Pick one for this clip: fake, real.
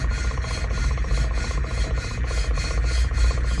real